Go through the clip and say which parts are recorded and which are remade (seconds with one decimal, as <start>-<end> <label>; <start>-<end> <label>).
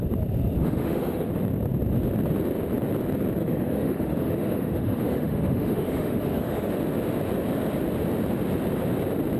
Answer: 0.0-0.6 recorded; 0.6-1.3 remade; 1.3-3.4 recorded; 3.4-6.7 remade; 6.7-9.4 recorded